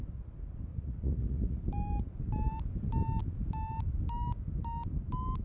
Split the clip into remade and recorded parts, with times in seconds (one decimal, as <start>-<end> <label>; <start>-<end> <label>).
0.0-0.7 recorded; 0.7-1.6 remade; 1.6-5.4 recorded